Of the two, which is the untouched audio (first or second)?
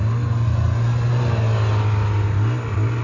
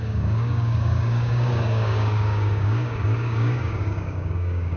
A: first